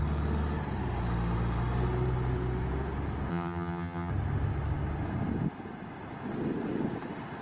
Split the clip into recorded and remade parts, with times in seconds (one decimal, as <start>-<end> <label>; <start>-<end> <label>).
0.0-3.3 recorded; 3.3-4.1 remade; 4.1-7.4 recorded

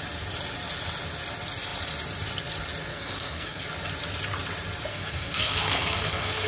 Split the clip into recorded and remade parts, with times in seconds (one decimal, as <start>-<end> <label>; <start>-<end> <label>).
0.0-2.9 recorded; 2.9-3.6 remade; 3.6-4.9 recorded; 4.9-6.5 remade

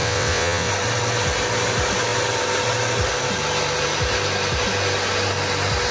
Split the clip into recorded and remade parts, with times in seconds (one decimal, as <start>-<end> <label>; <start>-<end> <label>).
0.0-0.7 remade; 0.7-5.9 recorded

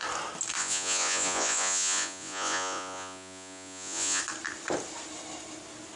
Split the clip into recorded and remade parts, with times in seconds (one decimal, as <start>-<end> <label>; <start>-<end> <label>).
0.0-0.6 recorded; 0.6-4.2 remade; 4.2-6.0 recorded